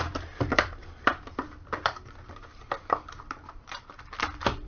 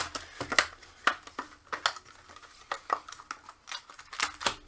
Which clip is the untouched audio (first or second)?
second